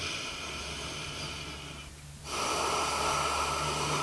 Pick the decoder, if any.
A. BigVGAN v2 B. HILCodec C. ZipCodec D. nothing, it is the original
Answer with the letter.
D